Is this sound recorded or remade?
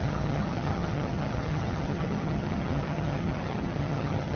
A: remade